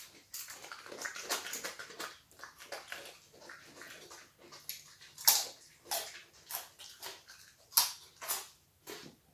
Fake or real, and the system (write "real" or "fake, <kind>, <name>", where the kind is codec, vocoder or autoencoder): real